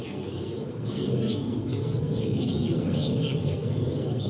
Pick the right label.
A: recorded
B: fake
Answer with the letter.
B